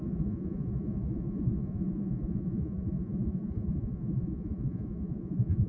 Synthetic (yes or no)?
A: yes